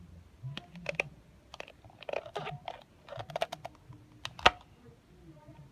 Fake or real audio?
real